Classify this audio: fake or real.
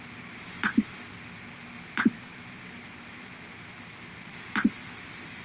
fake